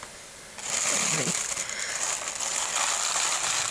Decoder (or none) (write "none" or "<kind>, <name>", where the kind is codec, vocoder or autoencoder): none